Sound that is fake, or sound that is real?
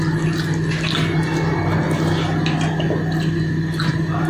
real